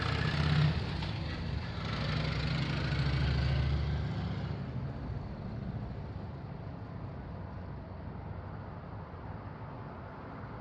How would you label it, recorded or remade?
recorded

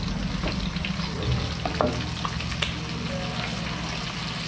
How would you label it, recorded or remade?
recorded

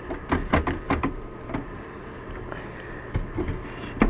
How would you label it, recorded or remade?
recorded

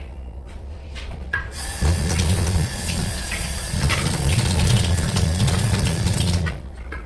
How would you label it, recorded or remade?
remade